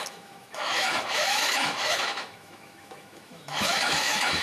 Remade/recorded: remade